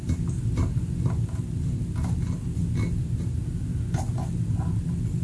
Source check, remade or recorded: recorded